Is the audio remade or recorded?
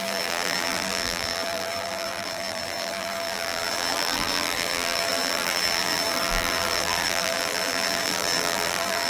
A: remade